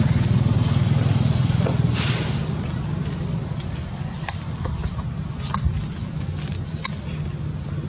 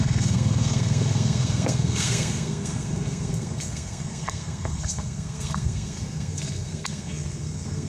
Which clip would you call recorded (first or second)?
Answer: first